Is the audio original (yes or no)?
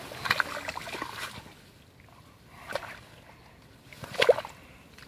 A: yes